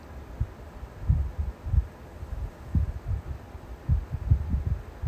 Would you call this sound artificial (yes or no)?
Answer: no